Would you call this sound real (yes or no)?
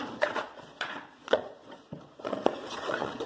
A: no